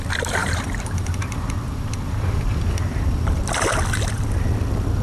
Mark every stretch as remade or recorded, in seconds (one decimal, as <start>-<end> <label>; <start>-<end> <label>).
0.0-0.4 recorded; 0.4-3.4 remade; 3.4-5.0 recorded